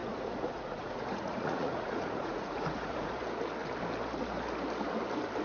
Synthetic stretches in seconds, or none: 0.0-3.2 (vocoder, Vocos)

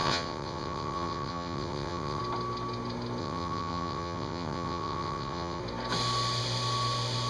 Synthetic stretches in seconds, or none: 0.0-2.2 (vocoder, WaveNeXt); 3.2-5.6

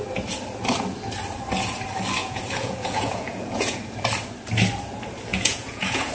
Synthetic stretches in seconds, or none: 2.2-3.8 (vocoder, Vocos); 5.3-6.1

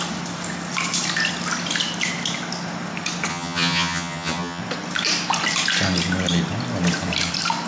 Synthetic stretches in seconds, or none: 3.3-4.6 (vocoder, HiFi-GAN)

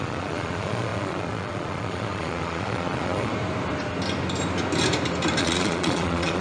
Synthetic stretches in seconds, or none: 0.0-3.3 (vocoder, Vocos); 5.4-6.4

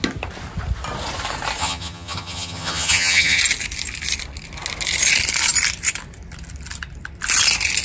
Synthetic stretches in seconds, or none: 1.6-3.4 (vocoder, HiFi-GAN)

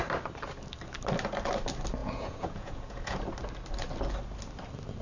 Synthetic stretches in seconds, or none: 2.0-3.2 (vocoder, Vocos)